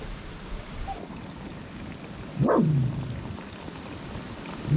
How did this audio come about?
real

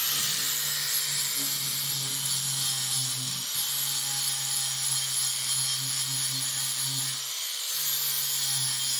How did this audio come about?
real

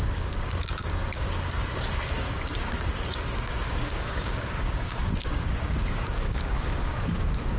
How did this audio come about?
fake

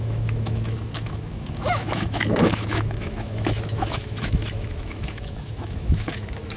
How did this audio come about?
fake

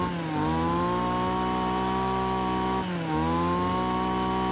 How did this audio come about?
real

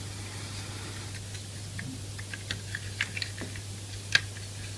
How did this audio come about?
real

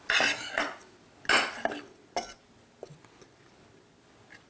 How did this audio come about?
real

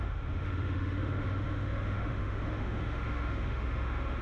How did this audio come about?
fake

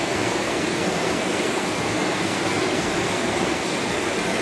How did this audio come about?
fake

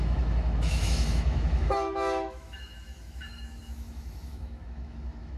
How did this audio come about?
fake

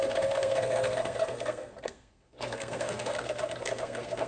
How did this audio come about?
fake